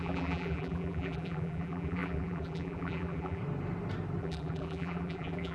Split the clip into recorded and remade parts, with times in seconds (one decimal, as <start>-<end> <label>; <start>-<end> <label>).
0.0-3.4 remade; 3.4-4.2 recorded; 4.2-5.5 remade